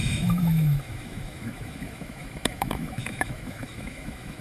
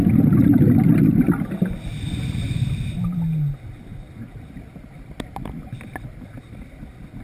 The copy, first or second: first